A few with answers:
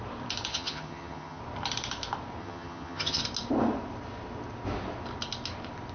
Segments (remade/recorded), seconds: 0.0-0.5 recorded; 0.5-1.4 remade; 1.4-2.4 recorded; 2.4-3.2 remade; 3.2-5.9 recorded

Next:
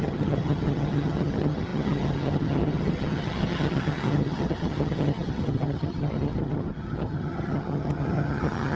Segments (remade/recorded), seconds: 0.0-8.8 remade

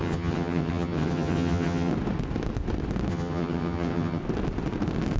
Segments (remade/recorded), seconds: 0.0-1.9 remade; 1.9-3.1 recorded; 3.1-4.2 remade; 4.2-5.2 recorded

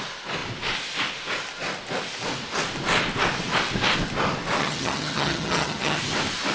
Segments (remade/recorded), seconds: 0.0-4.6 recorded; 4.6-6.0 remade; 6.0-6.5 recorded

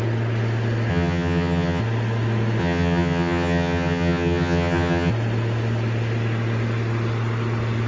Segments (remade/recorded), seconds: 0.0-0.9 recorded; 0.9-1.8 remade; 1.8-2.6 recorded; 2.6-5.1 remade; 5.1-7.9 recorded

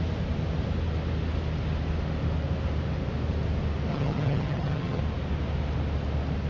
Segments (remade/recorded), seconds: 0.0-3.9 recorded; 3.9-5.0 remade; 5.0-6.5 recorded

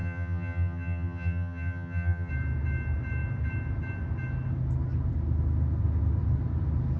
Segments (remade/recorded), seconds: 0.0-2.3 remade; 2.3-7.0 recorded